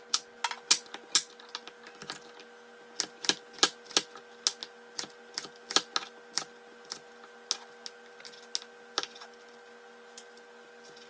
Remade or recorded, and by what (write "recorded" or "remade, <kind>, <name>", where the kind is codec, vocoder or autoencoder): recorded